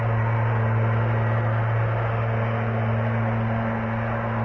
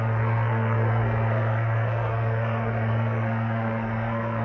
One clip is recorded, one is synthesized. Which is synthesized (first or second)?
second